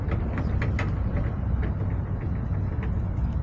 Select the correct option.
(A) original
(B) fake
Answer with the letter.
A